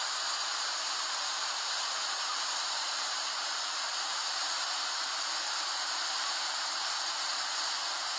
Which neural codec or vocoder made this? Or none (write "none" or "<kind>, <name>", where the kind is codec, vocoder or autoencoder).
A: vocoder, BigVGAN v2